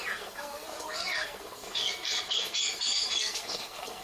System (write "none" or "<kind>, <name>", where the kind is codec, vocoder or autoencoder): codec, SNAC